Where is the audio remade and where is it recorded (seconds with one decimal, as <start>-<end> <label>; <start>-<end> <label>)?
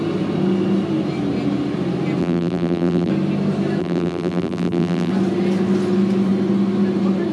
0.0-2.2 recorded; 2.2-3.1 remade; 3.1-3.8 recorded; 3.8-5.1 remade; 5.1-7.3 recorded